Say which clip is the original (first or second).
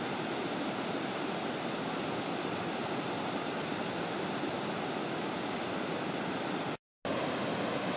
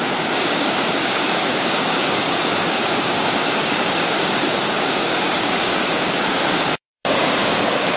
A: first